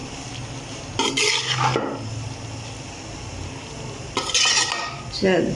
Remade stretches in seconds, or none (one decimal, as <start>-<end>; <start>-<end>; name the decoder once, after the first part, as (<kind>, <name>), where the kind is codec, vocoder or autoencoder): none